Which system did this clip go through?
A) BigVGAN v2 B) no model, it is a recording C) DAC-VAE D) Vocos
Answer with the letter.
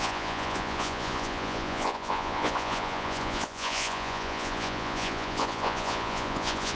D